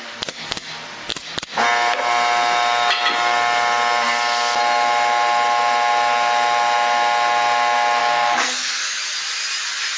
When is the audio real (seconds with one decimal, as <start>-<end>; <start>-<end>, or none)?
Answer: 0.0-8.0; 9.0-10.0